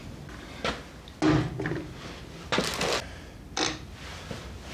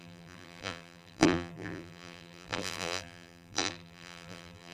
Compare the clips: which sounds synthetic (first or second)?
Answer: second